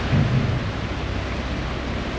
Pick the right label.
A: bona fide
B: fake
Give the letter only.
A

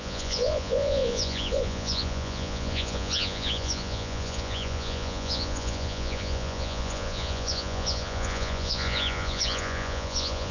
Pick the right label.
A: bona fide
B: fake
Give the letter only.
B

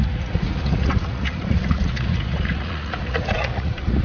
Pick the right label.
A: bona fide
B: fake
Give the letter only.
B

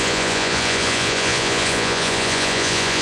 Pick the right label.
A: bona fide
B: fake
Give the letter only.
B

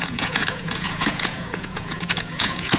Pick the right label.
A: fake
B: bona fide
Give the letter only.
A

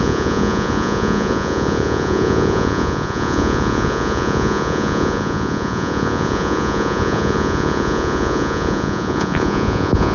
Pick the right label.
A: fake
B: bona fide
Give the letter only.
A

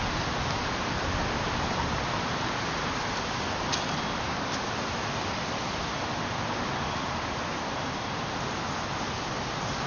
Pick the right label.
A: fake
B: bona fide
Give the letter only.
B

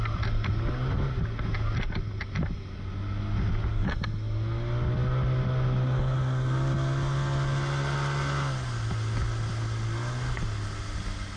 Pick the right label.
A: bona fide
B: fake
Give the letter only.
A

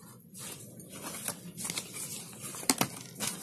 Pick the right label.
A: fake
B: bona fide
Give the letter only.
B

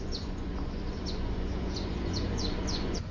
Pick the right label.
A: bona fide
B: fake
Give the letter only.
B